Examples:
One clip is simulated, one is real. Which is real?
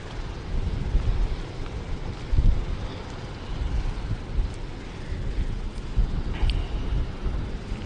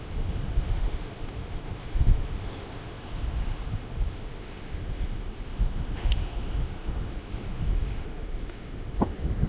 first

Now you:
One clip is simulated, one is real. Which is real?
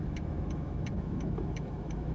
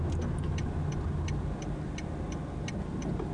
second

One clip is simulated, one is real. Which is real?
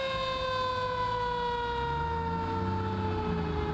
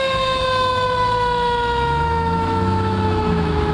first